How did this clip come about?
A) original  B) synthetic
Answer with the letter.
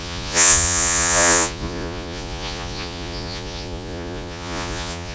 B